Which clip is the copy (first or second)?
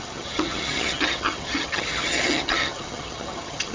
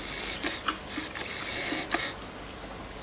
first